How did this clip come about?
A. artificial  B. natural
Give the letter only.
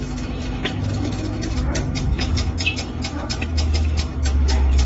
A